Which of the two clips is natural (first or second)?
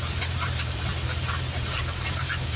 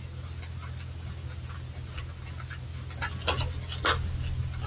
second